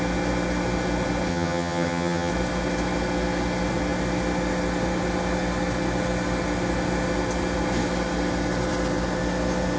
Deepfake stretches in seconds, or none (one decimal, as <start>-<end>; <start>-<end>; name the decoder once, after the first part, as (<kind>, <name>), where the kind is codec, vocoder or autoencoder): 1.3-2.3 (vocoder, HiFi-GAN)